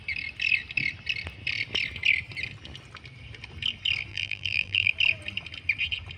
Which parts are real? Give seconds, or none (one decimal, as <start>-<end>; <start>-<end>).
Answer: 0.0-4.1; 4.9-6.2